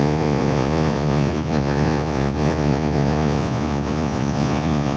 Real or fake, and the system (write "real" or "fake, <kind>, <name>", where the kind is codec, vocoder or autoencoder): fake, vocoder, Vocos